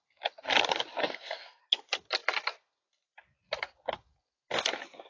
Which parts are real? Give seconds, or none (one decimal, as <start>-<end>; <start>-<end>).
0.0-1.0; 1.6-5.1